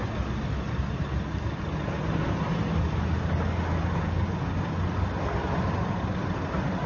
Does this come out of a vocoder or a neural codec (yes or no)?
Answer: no